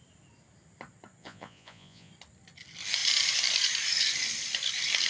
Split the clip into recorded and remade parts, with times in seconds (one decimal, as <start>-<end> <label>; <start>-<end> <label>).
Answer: 0.0-1.2 recorded; 1.2-2.1 remade; 2.1-5.1 recorded